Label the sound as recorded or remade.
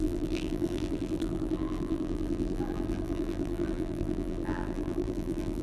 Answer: remade